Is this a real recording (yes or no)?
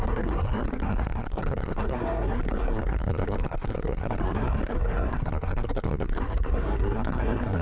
no